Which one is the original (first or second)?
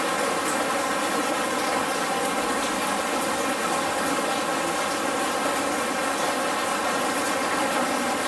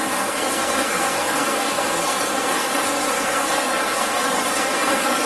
first